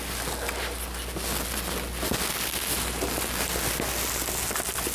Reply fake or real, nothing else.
real